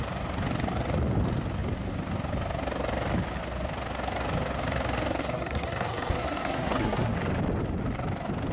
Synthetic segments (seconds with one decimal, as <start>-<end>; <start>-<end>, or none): 5.2-7.1